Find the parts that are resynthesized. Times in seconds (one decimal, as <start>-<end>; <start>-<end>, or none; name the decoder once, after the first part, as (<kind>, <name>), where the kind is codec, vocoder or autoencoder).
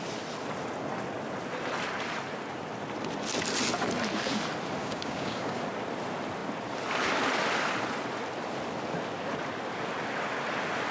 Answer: 4.8-5.6 (codec, DAC)